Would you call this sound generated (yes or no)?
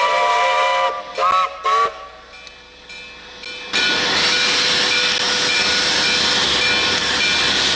no